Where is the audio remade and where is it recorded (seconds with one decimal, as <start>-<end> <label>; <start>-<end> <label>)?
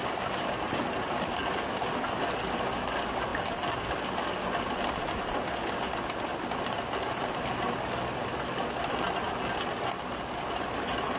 0.0-11.2 recorded